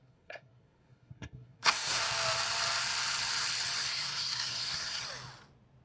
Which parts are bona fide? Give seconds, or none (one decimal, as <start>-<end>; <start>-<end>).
2.0-3.9; 5.0-5.8